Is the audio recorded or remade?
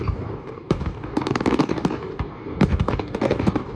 remade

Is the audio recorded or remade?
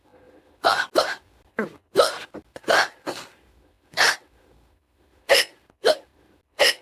recorded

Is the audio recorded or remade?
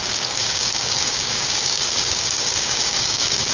remade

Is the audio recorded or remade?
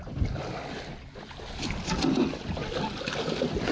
recorded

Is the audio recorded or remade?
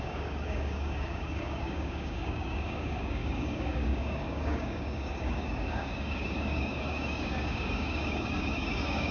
remade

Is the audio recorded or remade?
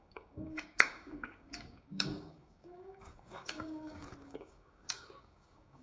remade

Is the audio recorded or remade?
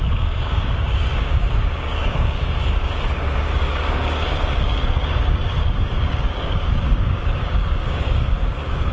remade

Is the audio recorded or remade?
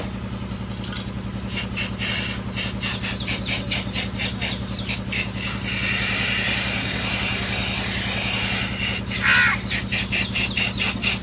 recorded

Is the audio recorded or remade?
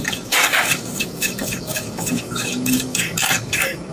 remade